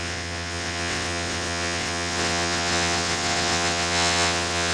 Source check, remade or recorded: remade